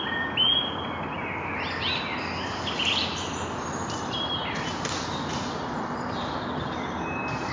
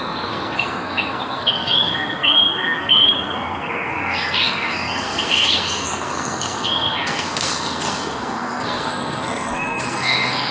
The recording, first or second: first